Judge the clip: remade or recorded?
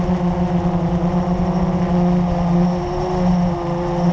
recorded